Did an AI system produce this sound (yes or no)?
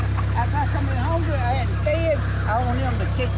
no